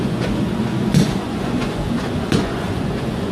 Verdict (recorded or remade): remade